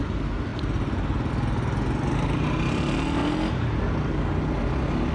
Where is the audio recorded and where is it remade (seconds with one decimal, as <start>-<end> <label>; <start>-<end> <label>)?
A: 0.0-5.1 recorded